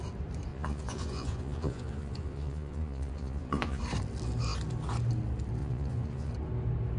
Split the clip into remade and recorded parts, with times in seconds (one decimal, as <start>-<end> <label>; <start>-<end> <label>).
0.0-0.5 recorded; 0.5-3.8 remade; 3.8-5.6 recorded; 5.6-6.3 remade; 6.3-7.0 recorded